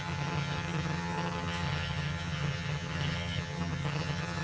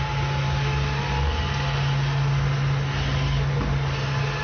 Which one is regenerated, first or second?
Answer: first